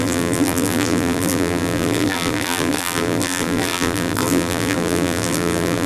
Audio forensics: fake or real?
fake